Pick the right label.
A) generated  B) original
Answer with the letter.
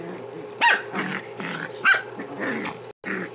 B